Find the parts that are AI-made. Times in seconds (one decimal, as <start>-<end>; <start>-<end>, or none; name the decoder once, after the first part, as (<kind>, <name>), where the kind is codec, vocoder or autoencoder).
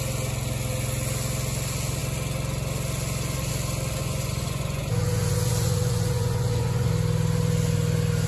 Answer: 4.0-6.9 (vocoder, Vocos)